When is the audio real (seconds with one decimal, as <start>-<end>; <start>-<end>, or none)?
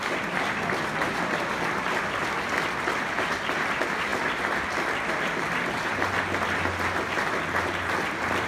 0.0-8.5